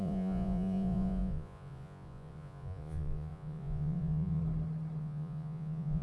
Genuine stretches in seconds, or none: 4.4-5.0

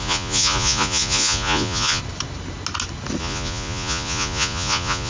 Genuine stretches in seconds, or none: 2.0-3.2

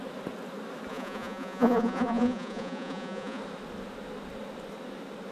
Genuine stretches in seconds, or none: 0.0-0.9; 3.4-5.3

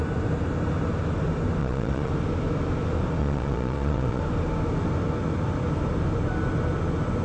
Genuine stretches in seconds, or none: 0.0-1.6; 2.1-3.2; 4.2-7.2

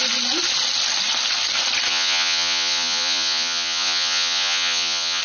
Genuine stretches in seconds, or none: 0.0-1.9

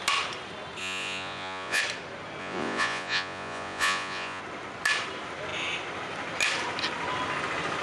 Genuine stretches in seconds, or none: 0.0-0.8; 1.8-2.4; 4.4-7.8